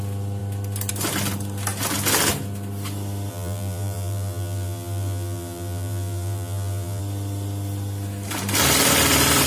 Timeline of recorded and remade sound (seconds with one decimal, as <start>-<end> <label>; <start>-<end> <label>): 0.0-3.3 recorded; 3.3-7.0 remade; 7.0-9.5 recorded

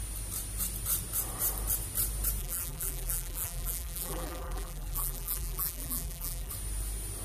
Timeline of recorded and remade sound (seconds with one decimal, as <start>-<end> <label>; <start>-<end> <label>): 0.0-2.4 recorded; 2.4-6.5 remade; 6.5-7.2 recorded

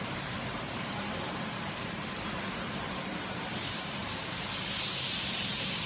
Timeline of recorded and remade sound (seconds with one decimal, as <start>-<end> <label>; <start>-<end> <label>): 0.0-5.9 remade

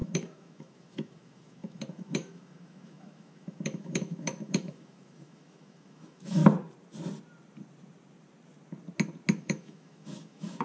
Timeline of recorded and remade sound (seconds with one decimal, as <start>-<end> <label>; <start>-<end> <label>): 0.0-6.4 remade; 6.4-9.4 recorded; 9.4-10.6 remade

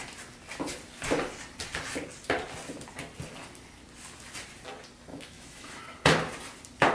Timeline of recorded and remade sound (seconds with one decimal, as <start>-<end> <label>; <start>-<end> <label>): 0.0-5.1 recorded; 5.1-5.8 remade; 5.8-6.9 recorded

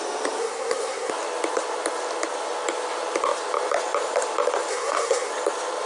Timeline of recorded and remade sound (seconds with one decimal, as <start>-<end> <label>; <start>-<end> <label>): 0.0-0.4 recorded; 0.4-1.1 remade; 1.1-4.7 recorded; 4.7-5.3 remade; 5.3-5.9 recorded

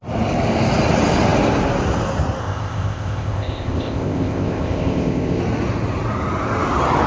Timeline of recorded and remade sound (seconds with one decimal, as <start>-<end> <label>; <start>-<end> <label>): 0.0-2.4 recorded; 2.4-5.4 remade; 5.4-7.1 recorded

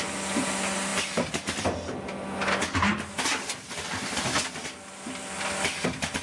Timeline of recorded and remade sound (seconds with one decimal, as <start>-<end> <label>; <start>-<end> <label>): 0.0-6.2 recorded